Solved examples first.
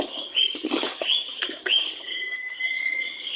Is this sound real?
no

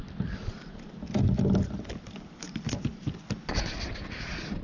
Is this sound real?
yes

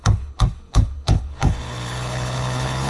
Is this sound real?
no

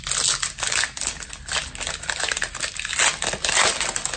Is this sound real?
yes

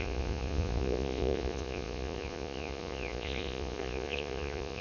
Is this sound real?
no